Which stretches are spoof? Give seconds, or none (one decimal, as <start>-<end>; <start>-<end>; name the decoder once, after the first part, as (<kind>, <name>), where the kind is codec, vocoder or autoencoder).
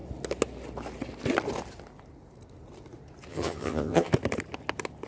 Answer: 3.3-4.1 (vocoder, HiFi-GAN)